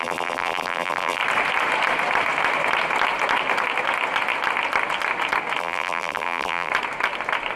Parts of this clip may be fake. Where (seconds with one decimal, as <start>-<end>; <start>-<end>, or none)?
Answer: 0.0-1.2; 5.6-6.7